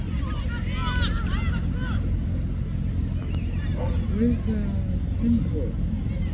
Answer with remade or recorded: recorded